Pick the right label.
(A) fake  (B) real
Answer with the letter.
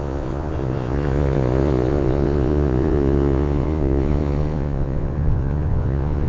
A